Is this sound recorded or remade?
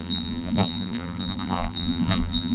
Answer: remade